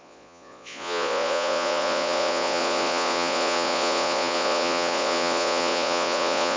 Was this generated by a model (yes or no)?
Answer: yes